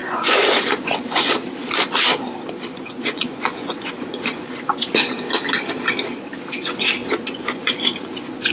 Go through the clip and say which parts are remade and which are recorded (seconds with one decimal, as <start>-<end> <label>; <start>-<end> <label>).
0.0-1.4 remade; 1.4-2.7 recorded; 2.7-5.0 remade; 5.0-7.0 recorded; 7.0-8.5 remade